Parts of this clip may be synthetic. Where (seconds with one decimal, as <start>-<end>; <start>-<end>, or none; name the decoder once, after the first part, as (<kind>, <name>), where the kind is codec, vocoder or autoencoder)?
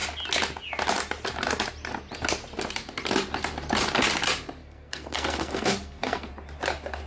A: 4.6-6.3 (codec, SNAC)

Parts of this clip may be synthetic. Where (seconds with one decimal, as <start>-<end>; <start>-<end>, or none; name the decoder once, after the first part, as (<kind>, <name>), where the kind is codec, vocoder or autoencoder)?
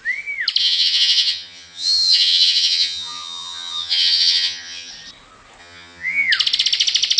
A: 0.6-4.9 (vocoder, HiFi-GAN); 5.6-6.3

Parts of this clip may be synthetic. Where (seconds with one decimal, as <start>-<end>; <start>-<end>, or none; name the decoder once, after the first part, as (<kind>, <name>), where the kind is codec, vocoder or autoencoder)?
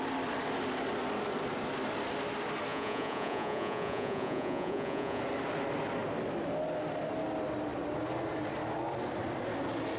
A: 2.7-5.2 (vocoder, Vocos)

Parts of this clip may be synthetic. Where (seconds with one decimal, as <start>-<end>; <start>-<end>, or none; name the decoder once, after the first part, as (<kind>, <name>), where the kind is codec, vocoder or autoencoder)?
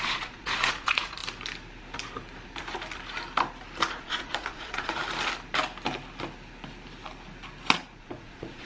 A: 0.0-1.2 (vocoder, Vocos); 3.9-5.0; 8.0-8.7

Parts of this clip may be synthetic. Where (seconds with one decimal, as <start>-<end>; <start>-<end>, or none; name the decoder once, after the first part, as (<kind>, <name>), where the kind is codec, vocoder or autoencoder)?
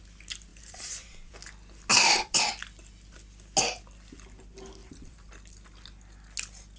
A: 0.5-1.3 (vocoder, BigVGAN v2); 1.9-2.5; 4.8-5.3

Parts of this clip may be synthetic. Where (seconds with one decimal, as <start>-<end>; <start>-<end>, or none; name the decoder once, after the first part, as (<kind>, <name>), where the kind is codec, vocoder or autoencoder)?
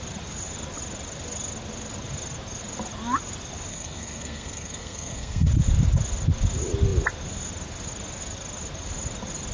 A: 3.7-5.5 (codec, SNAC)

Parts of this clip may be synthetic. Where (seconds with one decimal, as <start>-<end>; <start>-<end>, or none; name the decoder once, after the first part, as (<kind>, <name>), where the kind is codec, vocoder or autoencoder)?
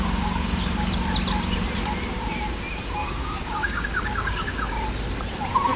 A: 3.0-4.7 (codec, DAC)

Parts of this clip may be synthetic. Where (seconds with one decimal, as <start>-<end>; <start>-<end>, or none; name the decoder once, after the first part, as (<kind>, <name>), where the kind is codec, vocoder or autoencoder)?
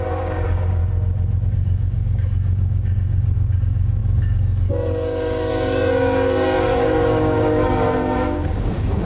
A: 0.0-0.8 (codec, DAC); 1.5-9.1